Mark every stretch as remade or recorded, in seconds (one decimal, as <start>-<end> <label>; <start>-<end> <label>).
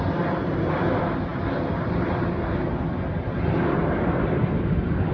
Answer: 0.0-5.1 recorded